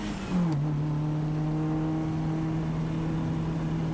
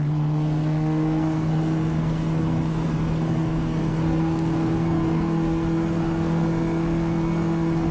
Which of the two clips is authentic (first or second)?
first